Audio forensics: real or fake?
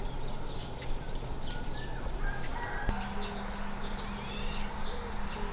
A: real